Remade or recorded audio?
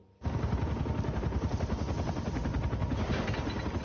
recorded